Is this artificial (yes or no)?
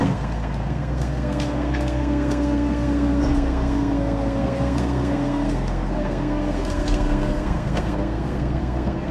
yes